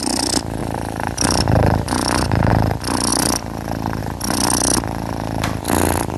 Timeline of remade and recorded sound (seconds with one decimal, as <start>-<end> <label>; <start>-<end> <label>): 0.0-0.6 recorded; 0.6-2.5 remade; 2.5-6.2 recorded